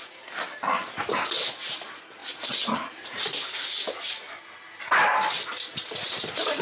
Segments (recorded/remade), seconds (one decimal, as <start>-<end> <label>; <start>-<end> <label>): 0.0-6.6 recorded